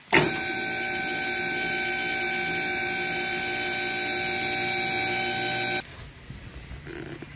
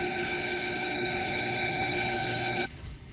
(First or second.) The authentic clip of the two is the first